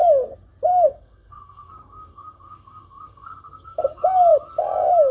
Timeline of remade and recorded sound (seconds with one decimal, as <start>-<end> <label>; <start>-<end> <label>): 0.0-0.7 recorded; 0.7-3.8 remade; 3.8-5.1 recorded